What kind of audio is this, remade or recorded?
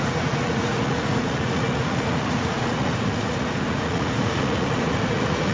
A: remade